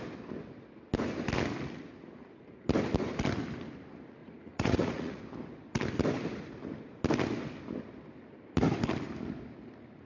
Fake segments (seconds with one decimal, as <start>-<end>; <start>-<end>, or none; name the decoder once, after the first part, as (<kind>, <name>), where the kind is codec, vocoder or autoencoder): 4.2-5.2 (vocoder, Vocos)